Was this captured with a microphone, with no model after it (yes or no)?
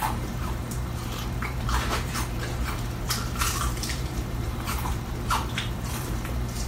no